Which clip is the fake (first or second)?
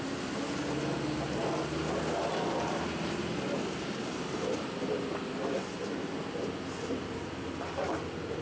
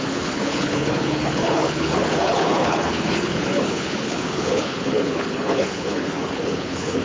second